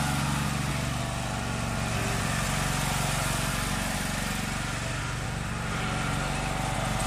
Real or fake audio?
real